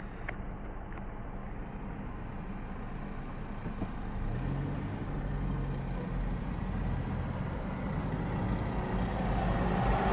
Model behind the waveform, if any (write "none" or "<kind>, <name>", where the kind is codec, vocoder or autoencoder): none